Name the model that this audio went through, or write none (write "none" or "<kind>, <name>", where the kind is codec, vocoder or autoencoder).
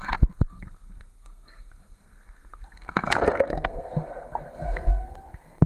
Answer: codec, SNAC